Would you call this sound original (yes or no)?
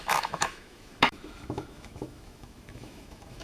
no